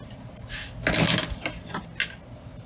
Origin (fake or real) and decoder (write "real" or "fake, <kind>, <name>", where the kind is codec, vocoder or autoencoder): real